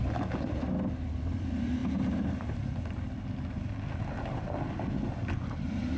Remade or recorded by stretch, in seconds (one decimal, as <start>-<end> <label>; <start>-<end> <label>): 0.0-6.0 recorded